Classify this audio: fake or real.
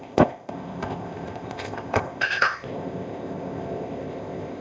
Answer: fake